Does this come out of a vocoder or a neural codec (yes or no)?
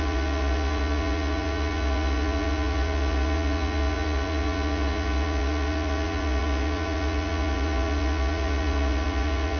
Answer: yes